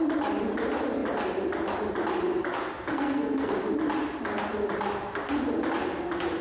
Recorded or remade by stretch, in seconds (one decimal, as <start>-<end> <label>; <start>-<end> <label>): 0.0-2.9 recorded; 2.9-3.6 remade; 3.6-6.4 recorded